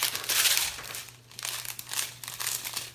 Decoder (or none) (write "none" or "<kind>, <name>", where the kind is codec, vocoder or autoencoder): none